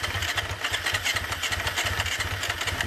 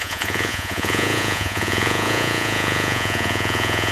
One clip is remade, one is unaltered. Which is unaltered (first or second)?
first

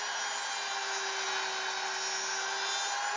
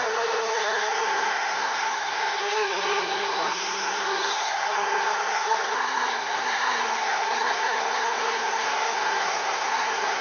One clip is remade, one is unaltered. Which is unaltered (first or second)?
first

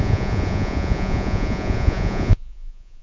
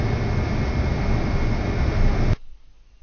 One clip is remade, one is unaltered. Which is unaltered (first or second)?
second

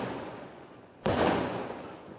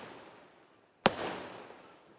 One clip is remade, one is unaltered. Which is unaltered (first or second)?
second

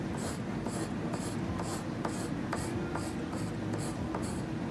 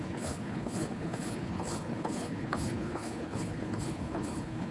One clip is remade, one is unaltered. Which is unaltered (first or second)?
first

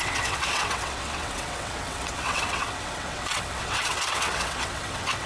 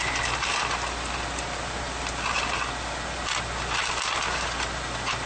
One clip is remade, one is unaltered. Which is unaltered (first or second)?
second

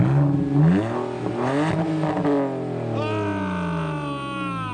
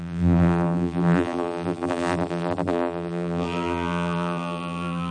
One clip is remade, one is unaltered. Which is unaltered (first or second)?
first